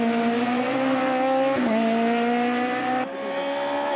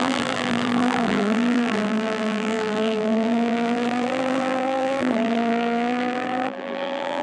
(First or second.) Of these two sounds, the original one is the first